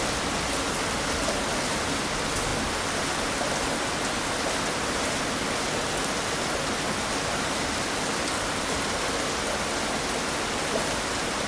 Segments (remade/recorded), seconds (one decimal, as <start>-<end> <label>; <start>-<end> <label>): 0.0-11.5 recorded